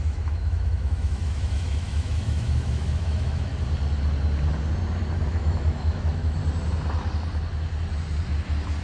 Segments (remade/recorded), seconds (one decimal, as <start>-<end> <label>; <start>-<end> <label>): 0.0-3.5 remade; 3.5-5.3 recorded; 5.3-6.4 remade; 6.4-8.8 recorded